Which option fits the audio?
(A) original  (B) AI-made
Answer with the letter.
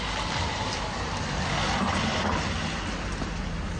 A